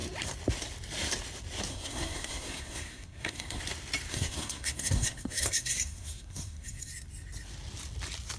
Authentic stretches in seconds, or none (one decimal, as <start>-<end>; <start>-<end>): 0.0-1.7; 3.6-4.1; 6.9-8.4